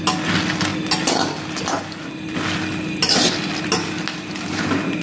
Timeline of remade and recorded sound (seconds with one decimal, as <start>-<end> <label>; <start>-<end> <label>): 0.0-5.0 recorded